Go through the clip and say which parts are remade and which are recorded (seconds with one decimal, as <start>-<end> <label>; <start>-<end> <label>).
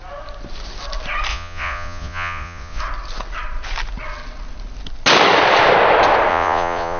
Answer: 0.0-1.3 recorded; 1.3-2.8 remade; 2.8-6.3 recorded; 6.3-7.0 remade